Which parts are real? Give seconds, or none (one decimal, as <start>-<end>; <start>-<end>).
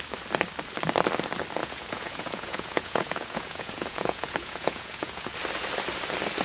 0.0-1.6; 5.3-6.4